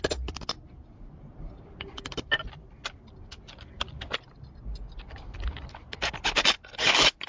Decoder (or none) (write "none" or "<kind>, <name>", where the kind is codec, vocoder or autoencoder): none